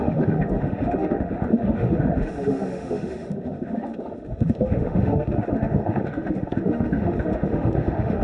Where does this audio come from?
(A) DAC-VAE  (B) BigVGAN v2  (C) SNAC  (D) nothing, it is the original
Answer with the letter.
A